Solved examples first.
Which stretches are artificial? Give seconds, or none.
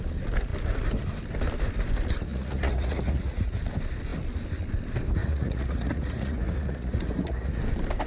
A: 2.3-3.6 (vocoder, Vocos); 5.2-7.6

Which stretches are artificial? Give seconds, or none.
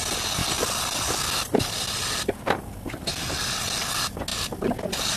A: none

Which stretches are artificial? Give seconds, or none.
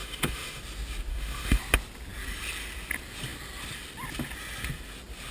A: 0.0-0.6 (autoencoder, DAC-VAE); 1.1-1.6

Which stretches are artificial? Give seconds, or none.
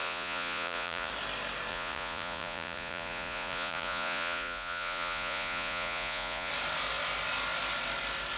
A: 0.0-1.1 (vocoder, Vocos); 1.7-6.5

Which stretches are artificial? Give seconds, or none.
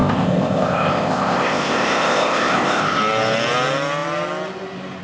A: 0.0-3.0 (codec, ZipCodec)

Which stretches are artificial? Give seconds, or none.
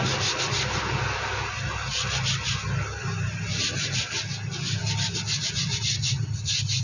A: none